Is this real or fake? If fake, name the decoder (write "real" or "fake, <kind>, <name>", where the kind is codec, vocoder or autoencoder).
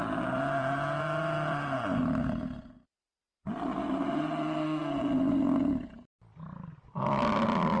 fake, vocoder, BigVGAN v2